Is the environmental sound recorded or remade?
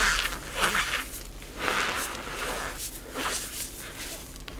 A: recorded